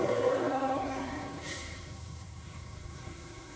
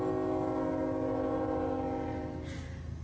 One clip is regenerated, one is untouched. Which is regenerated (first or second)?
first